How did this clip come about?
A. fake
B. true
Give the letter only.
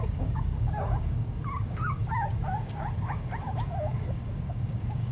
A